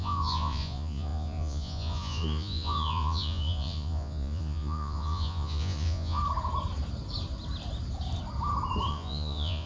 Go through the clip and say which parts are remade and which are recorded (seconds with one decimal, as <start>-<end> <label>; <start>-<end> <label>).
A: 0.0-6.2 remade; 6.2-8.9 recorded; 8.9-9.7 remade